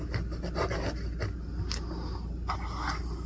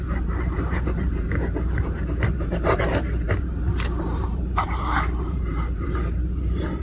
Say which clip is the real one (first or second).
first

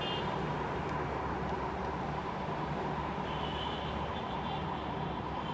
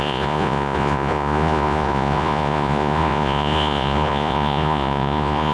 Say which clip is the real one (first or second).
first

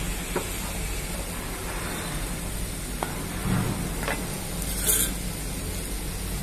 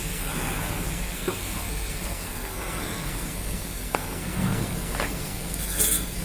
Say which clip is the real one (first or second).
first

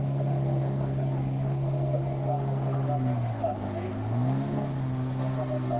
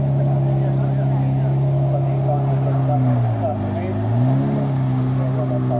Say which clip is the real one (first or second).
second